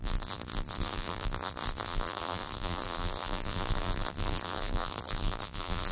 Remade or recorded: remade